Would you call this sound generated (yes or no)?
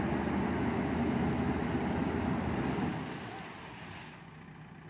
no